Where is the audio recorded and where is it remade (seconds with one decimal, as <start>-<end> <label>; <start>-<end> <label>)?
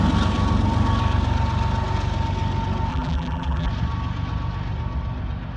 0.0-2.9 recorded; 2.9-3.7 remade; 3.7-5.6 recorded